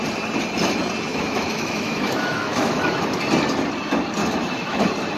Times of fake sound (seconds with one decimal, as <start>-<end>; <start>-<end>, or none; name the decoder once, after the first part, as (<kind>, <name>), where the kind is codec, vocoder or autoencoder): 1.1-3.2 (autoencoder, DAC-VAE); 4.2-4.8

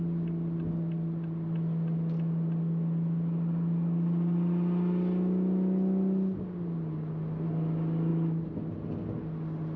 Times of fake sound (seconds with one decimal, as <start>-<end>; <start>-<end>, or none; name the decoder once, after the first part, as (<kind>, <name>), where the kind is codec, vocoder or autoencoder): none